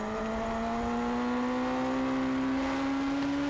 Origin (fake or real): real